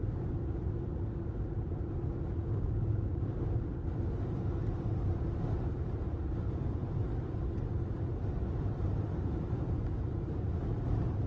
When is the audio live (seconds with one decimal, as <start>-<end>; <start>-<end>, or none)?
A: 0.0-2.5; 3.3-11.3